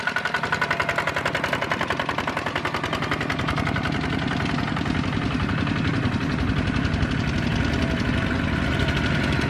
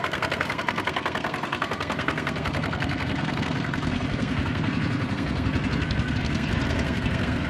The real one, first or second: first